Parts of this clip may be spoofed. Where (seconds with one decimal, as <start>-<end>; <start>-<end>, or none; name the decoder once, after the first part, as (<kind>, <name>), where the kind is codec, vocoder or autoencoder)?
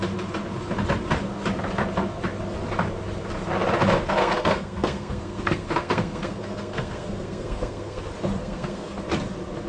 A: 4.2-8.0 (codec, SNAC); 8.4-8.9